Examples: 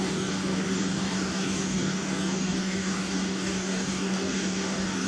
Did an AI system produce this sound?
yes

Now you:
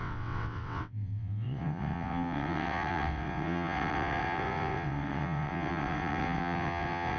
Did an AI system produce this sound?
yes